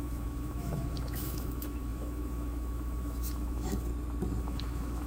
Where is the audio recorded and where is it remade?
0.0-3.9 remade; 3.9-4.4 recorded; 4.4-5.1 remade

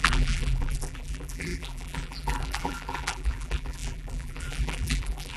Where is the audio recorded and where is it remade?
0.0-5.4 remade

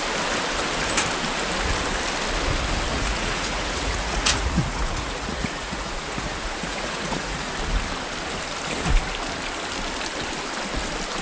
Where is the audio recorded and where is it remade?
0.0-2.9 recorded; 2.9-7.5 remade; 7.5-11.2 recorded

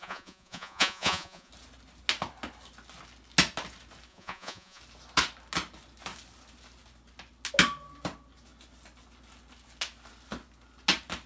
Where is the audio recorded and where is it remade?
0.0-1.5 remade; 1.5-4.1 recorded; 4.1-4.8 remade; 4.8-11.3 recorded

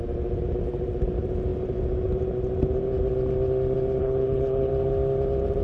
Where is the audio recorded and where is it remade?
0.0-4.0 recorded; 4.0-4.7 remade; 4.7-5.6 recorded

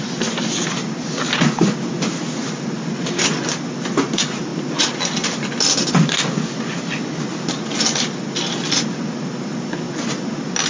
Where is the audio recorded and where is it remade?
0.0-10.7 recorded